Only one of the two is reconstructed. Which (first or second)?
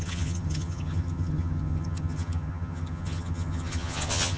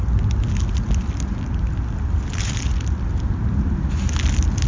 first